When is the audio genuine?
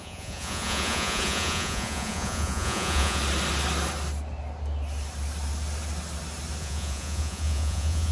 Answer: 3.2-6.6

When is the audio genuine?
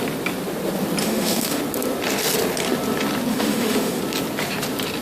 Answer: 0.0-1.0; 1.6-3.3; 4.0-5.0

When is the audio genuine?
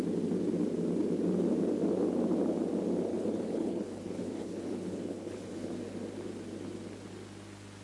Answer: 0.0-3.1; 5.7-7.8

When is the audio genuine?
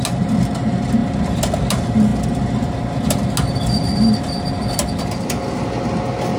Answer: 0.0-6.4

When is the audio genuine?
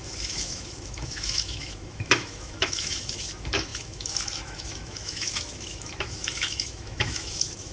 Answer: none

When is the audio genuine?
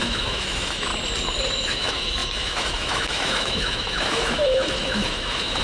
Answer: 0.9-1.5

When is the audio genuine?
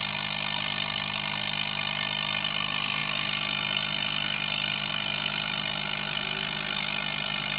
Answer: 0.0-7.6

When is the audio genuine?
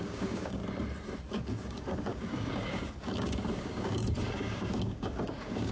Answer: 0.6-1.3